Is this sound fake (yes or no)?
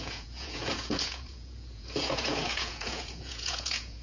yes